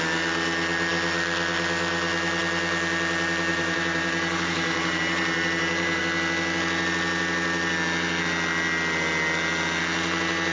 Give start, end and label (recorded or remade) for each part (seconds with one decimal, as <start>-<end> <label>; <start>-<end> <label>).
0.0-3.5 recorded; 3.5-6.0 remade; 6.0-10.5 recorded